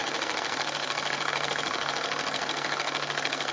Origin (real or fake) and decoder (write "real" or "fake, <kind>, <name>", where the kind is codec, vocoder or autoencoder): fake, codec, SNAC